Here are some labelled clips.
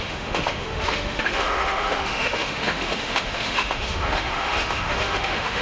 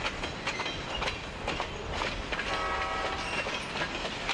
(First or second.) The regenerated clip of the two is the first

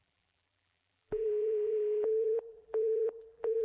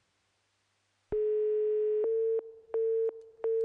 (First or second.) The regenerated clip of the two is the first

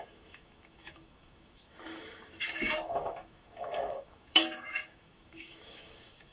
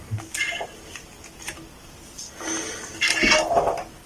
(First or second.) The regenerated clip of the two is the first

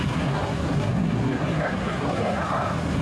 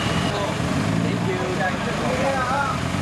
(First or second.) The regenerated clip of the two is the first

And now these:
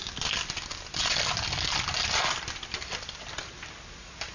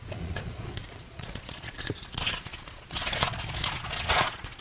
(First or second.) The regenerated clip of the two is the second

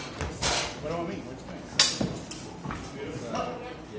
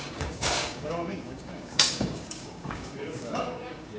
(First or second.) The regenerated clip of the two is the second